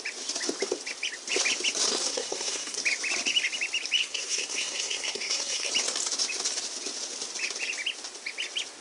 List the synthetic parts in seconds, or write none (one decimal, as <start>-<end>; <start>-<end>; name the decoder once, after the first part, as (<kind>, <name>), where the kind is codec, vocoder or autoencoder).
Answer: 1.9-2.8 (codec, SNAC); 4.0-5.7